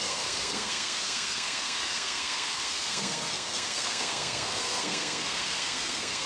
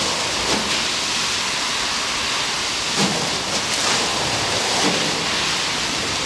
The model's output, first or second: first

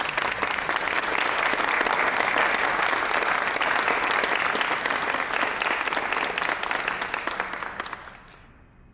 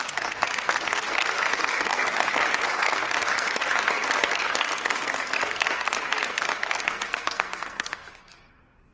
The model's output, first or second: second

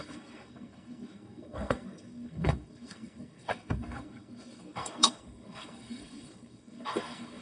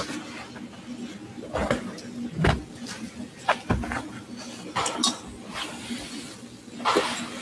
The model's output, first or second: first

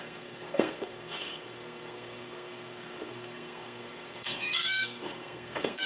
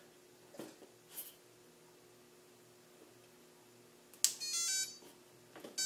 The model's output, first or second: first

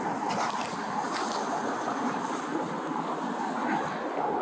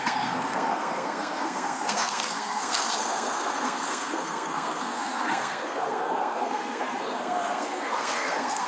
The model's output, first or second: second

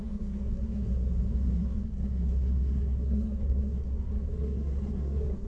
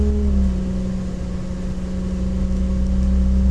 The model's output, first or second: first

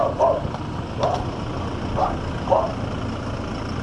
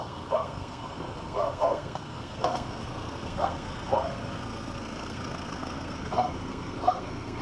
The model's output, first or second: second